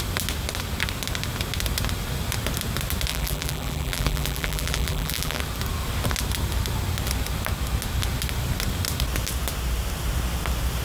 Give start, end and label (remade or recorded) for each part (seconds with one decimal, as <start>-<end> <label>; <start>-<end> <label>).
0.0-3.1 recorded; 3.1-5.4 remade; 5.4-10.8 recorded